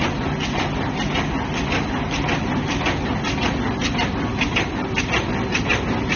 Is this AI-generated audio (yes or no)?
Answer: no